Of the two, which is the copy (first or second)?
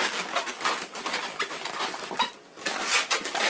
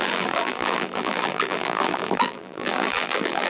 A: second